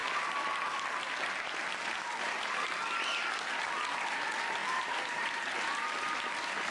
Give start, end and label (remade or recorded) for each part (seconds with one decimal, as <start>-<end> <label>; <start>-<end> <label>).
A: 0.0-4.6 recorded; 4.6-6.0 remade; 6.0-6.7 recorded